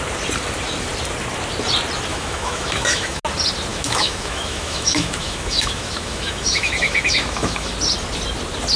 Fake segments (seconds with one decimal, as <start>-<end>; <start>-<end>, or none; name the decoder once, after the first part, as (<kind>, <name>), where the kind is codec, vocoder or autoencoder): 2.1-3.2 (autoencoder, DAC-VAE); 3.7-7.7